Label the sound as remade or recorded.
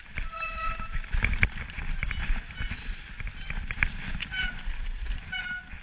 remade